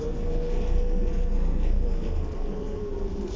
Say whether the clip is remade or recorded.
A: remade